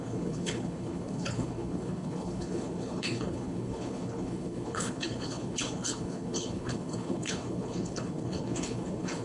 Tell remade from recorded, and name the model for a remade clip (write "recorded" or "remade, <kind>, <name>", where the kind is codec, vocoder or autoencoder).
remade, codec, HILCodec